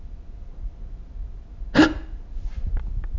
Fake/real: real